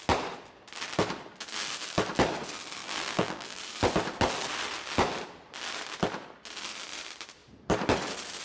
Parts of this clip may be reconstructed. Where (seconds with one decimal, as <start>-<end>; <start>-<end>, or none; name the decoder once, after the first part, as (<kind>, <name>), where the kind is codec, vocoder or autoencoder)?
2.8-3.6 (vocoder, BigVGAN v2)

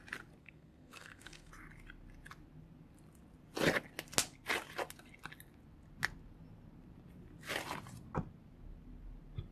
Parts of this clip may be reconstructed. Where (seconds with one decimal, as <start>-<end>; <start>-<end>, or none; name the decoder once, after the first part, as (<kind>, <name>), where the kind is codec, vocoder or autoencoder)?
0.4-1.5 (codec, SNAC)

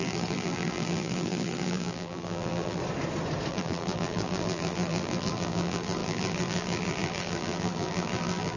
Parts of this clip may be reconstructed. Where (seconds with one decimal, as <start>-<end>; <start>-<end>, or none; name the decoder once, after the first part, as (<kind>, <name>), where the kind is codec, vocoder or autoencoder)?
0.0-2.8 (vocoder, BigVGAN v2); 3.5-8.6

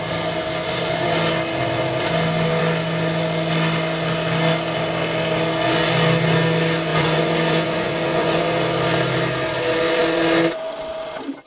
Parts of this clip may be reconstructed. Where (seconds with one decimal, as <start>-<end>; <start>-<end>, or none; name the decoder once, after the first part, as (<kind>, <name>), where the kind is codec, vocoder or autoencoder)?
6.9-8.4 (vocoder, Vocos)

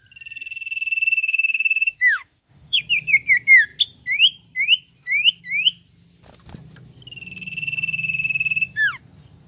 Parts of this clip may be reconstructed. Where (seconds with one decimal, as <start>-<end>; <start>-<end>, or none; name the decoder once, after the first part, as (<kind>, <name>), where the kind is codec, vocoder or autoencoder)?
1.2-2.8 (autoencoder, DAC-VAE)

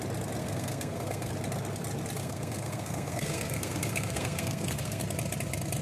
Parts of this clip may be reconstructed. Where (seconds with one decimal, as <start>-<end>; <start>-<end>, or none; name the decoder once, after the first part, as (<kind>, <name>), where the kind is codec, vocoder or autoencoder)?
0.4-1.3 (codec, SNAC); 2.2-5.0

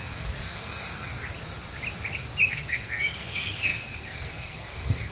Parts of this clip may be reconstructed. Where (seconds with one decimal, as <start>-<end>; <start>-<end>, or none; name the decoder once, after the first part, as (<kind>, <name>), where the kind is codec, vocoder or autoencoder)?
0.0-1.1 (codec, SNAC); 2.5-5.1

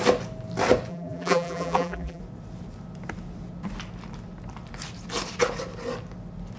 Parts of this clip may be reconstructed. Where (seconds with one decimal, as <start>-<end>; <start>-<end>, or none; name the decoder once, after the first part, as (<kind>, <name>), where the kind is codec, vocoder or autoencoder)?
0.9-2.2 (vocoder, BigVGAN v2)